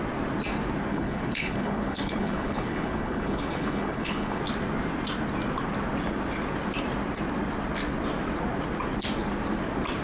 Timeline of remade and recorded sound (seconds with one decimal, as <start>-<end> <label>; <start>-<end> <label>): 0.0-0.9 recorded; 0.9-4.4 remade; 4.4-10.0 recorded